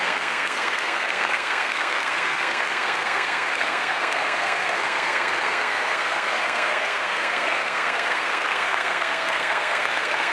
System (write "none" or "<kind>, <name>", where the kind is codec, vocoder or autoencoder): codec, SNAC